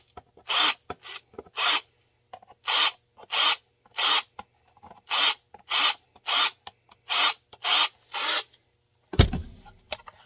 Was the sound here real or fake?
real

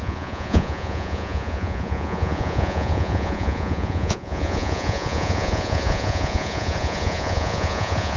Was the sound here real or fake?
fake